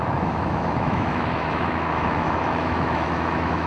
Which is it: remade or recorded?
remade